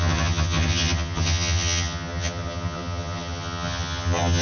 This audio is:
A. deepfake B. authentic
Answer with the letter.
A